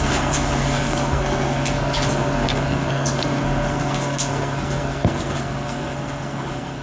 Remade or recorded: remade